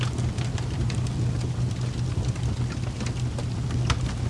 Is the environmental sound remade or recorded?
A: recorded